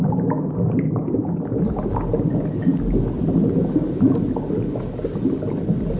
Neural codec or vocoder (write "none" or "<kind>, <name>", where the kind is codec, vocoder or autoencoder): none